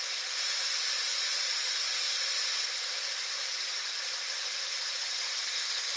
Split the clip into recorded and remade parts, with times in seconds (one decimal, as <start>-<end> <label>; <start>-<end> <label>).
0.0-6.0 recorded